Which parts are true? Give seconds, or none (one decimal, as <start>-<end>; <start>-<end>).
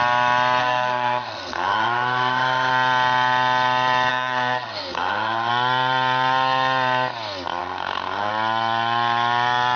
0.0-0.6; 2.7-4.1; 5.5-7.6; 8.3-9.8